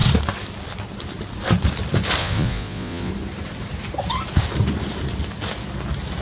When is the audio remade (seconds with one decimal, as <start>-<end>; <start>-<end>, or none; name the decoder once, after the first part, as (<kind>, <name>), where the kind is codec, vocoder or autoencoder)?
2.2-3.1 (vocoder, Vocos)